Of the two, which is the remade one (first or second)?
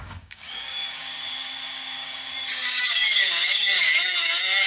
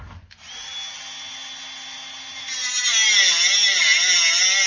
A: first